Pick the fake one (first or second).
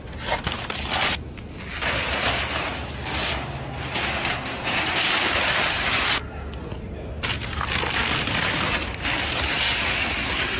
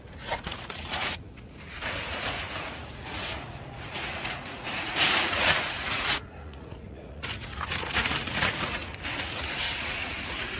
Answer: second